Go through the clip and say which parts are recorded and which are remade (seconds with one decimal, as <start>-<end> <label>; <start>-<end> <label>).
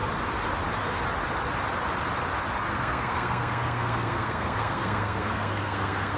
0.0-2.7 recorded; 2.7-6.2 remade